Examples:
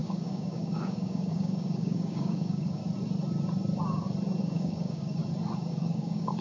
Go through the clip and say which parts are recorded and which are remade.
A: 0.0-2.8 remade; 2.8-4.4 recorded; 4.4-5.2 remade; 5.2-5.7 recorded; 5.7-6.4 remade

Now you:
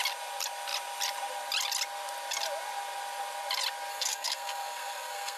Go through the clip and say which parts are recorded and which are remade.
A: 0.0-3.9 recorded; 3.9-5.4 remade

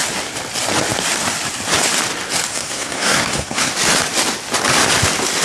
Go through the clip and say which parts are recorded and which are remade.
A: 0.0-2.5 recorded; 2.5-3.7 remade; 3.7-5.4 recorded

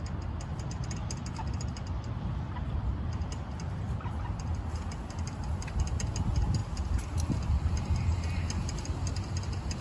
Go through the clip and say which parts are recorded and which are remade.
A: 0.0-9.8 recorded

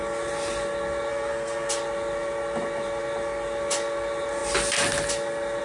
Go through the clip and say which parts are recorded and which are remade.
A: 0.0-1.1 recorded; 1.1-1.7 remade; 1.7-5.6 recorded

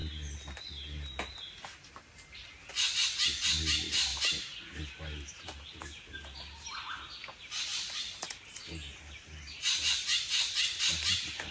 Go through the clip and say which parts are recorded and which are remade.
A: 0.0-11.5 recorded

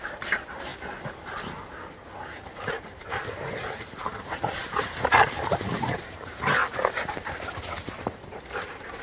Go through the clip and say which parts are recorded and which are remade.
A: 0.0-0.7 remade; 0.7-2.7 recorded; 2.7-6.6 remade; 6.6-8.0 recorded; 8.0-9.0 remade

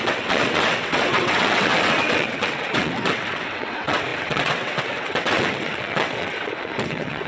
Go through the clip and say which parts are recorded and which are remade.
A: 0.0-7.3 remade